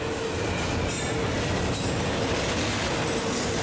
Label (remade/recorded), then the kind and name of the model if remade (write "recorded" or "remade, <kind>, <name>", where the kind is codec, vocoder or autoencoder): recorded